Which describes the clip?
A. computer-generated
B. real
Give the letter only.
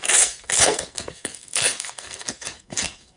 A